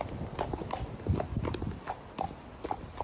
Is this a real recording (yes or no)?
yes